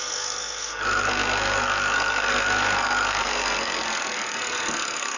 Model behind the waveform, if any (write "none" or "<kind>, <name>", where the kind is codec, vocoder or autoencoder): codec, SNAC